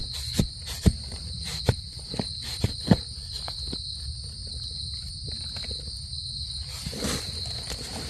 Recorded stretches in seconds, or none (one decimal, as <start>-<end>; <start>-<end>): 0.0-8.1